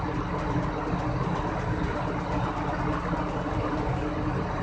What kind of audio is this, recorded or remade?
recorded